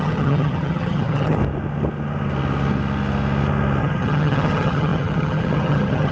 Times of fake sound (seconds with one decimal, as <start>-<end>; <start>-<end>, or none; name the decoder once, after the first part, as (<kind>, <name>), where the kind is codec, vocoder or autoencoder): 0.0-1.4 (vocoder, HiFi-GAN); 3.8-6.1